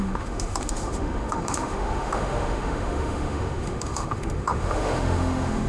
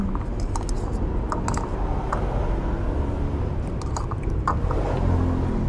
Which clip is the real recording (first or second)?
second